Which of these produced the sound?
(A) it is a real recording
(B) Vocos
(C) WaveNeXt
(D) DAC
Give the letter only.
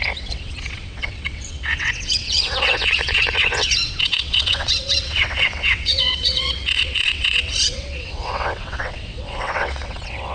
C